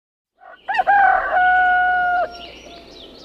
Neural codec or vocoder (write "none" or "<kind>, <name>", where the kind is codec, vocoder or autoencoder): none